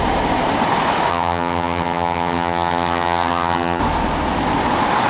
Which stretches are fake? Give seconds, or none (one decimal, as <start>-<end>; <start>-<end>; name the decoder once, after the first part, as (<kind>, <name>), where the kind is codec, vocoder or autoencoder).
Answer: 1.1-3.8 (vocoder, HiFi-GAN)